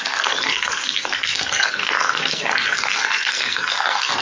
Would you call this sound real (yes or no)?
no